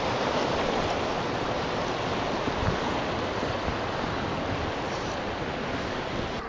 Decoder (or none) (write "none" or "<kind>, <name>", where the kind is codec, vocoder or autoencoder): none